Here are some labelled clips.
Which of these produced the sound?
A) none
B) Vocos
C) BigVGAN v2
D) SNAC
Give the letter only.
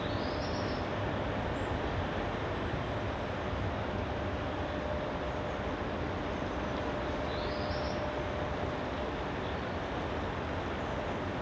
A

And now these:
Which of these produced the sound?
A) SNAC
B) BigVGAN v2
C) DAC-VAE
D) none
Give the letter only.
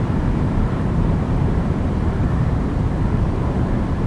B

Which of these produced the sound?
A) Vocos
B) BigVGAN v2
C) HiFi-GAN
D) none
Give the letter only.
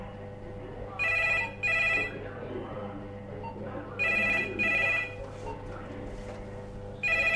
D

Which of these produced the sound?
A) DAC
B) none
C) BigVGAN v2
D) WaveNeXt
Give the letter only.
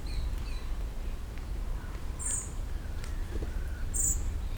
C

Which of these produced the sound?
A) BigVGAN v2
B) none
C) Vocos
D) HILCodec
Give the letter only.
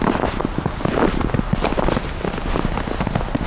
B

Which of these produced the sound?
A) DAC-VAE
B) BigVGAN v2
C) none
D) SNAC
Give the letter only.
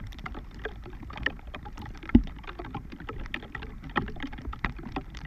B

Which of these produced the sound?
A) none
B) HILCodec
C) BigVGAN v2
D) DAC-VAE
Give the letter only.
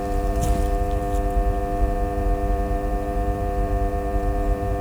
C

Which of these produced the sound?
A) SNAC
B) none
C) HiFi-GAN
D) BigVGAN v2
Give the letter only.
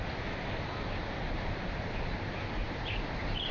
B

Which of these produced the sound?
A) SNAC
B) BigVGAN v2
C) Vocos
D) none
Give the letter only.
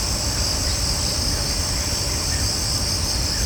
D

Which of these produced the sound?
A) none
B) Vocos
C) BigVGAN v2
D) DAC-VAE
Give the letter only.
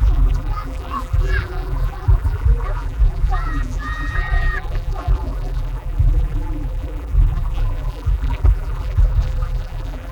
C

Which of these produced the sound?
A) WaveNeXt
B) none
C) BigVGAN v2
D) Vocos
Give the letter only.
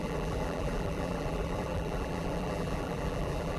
C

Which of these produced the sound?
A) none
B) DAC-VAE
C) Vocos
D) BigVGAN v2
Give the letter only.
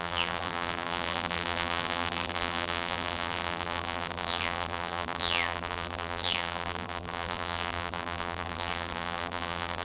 D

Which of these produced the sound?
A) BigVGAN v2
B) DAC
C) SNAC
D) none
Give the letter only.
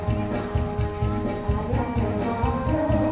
D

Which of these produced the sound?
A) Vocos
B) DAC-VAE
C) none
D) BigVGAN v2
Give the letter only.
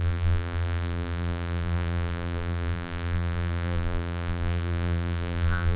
D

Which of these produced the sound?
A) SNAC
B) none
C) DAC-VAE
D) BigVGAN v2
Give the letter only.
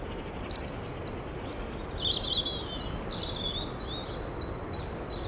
B